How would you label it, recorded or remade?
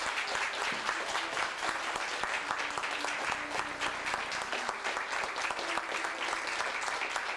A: recorded